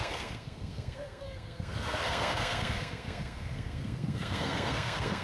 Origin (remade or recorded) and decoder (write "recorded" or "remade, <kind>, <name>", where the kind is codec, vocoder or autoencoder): remade, codec, SNAC